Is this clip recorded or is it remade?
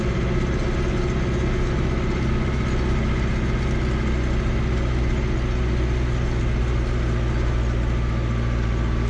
recorded